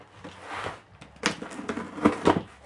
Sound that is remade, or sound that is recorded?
recorded